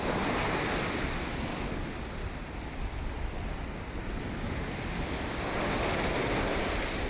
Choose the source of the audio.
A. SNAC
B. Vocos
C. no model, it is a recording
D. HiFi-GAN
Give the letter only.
C